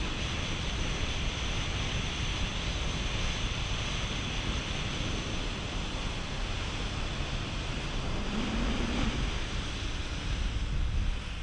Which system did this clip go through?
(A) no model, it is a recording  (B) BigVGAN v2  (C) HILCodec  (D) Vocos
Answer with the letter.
A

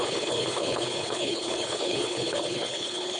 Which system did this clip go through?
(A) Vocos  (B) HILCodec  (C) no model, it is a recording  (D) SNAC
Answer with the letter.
B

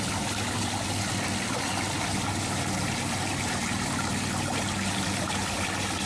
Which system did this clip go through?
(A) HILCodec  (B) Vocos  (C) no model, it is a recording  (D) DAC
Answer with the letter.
C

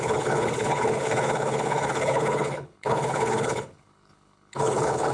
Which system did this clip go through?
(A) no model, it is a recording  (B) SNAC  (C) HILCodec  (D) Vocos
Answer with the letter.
C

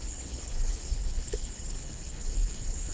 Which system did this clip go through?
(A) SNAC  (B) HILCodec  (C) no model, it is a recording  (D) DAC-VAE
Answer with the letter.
B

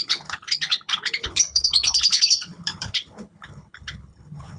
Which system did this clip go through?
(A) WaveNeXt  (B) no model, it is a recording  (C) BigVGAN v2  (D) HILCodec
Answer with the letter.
D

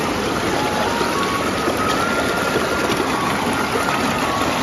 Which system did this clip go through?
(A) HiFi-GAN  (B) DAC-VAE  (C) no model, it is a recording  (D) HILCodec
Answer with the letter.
C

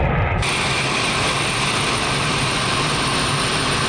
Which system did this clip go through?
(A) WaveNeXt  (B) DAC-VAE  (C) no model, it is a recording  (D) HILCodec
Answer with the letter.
C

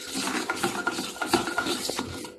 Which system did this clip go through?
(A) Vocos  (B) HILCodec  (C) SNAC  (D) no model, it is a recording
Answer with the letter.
D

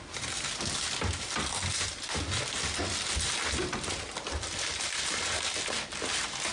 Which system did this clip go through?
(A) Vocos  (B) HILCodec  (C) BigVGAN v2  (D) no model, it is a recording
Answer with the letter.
D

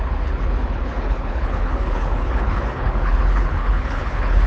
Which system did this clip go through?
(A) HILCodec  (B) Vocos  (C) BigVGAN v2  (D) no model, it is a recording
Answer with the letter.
A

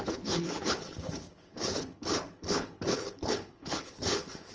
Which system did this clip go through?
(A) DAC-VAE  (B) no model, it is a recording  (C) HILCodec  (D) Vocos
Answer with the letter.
C